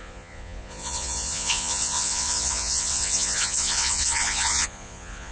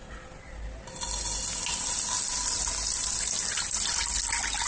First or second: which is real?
second